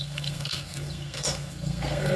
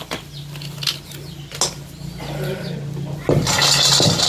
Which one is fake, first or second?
first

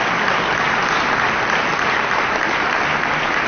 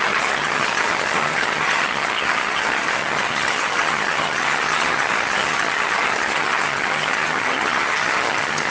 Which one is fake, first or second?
second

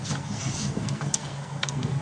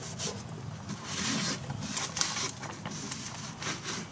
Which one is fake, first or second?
first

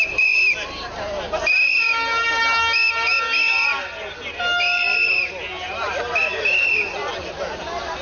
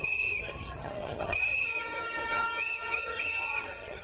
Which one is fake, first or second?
second